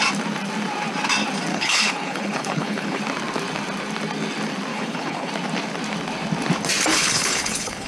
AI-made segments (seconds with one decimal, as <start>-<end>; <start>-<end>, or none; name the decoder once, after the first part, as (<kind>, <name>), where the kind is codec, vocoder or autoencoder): 1.5-3.0 (codec, HILCodec); 4.7-5.3; 6.9-7.9